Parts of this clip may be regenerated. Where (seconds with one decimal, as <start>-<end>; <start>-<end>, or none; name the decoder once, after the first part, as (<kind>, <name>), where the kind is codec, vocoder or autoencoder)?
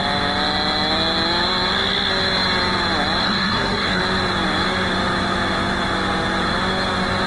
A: 3.2-4.0 (codec, SNAC)